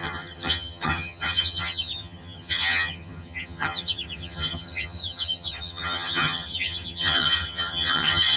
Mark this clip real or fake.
fake